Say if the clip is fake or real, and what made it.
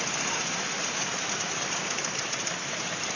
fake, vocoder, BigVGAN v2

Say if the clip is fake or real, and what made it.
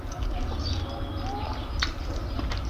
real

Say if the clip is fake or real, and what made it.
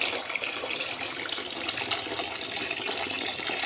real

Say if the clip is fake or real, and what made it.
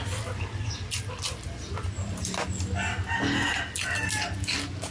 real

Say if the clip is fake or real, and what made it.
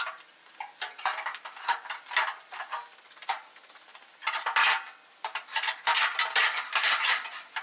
real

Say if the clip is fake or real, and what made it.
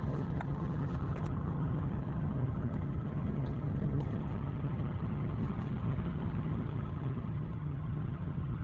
fake, vocoder, HiFi-GAN